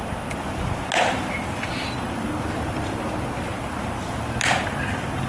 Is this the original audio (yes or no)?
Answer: yes